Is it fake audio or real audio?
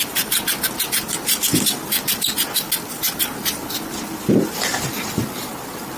real